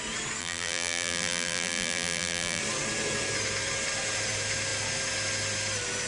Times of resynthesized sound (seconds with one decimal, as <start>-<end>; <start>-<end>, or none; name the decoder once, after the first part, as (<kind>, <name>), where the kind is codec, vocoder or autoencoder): 0.4-2.6 (vocoder, BigVGAN v2)